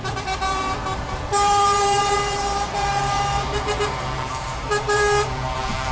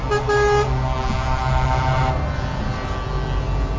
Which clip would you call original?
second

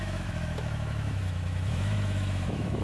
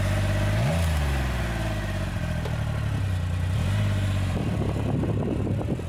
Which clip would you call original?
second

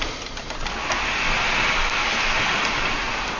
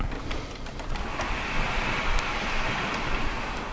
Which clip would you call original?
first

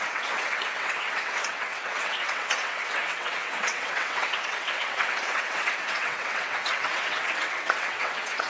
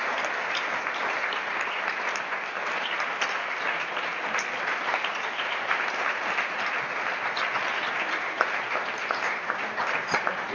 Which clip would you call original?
second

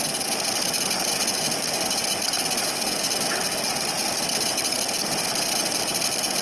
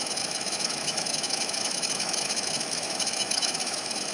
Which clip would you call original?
first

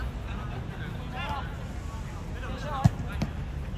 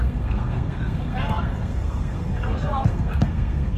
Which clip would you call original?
first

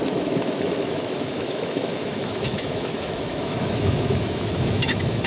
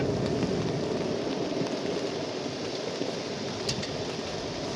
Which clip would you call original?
second